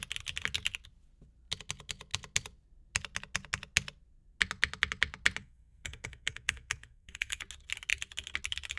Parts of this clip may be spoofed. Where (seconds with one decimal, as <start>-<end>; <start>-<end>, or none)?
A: 5.4-7.4